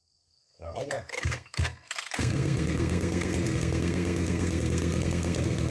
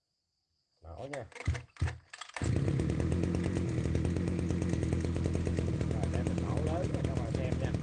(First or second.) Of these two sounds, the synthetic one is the first